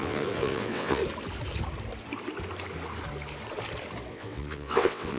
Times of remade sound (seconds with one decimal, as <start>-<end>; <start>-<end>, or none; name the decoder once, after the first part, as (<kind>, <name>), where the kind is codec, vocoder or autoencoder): 0.0-1.0 (vocoder, WaveNeXt); 4.1-5.2